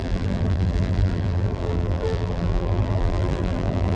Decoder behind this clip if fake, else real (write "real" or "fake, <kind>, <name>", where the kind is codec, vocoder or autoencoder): fake, vocoder, BigVGAN v2